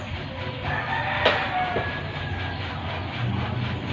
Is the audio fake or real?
real